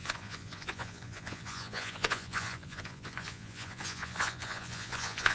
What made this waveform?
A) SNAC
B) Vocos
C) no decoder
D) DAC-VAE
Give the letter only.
B